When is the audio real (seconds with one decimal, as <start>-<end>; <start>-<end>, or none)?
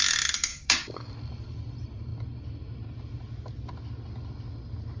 0.0-0.5; 1.1-5.0